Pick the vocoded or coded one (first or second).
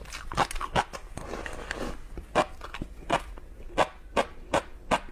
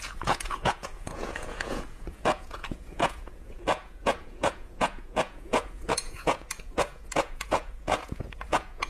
second